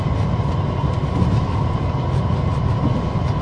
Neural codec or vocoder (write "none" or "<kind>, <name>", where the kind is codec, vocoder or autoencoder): none